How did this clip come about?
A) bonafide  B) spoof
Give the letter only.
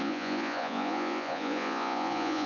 B